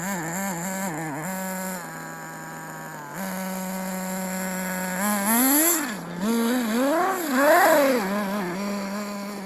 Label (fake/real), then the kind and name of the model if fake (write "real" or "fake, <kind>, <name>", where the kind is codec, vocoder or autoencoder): real